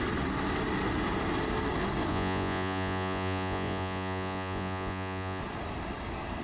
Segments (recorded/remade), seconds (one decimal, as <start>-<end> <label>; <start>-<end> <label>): 0.0-2.1 recorded; 2.1-5.4 remade; 5.4-6.4 recorded

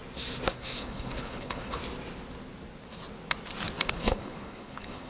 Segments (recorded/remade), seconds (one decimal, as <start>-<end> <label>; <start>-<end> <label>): 0.0-0.5 recorded; 0.5-1.8 remade; 1.8-3.8 recorded; 3.8-5.1 remade

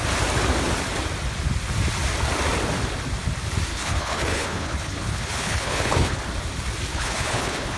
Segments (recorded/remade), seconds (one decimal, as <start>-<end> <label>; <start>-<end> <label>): 0.0-3.7 recorded; 3.7-6.2 remade; 6.2-6.9 recorded; 6.9-7.8 remade

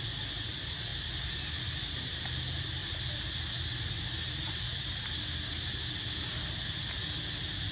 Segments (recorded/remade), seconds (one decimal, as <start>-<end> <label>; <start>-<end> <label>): 0.0-7.7 recorded